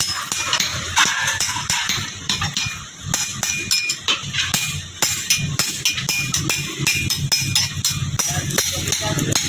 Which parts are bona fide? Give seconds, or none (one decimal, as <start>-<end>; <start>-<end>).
0.0-0.7; 2.4-9.5